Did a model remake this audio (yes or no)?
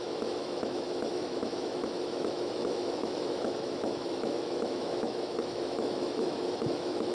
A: yes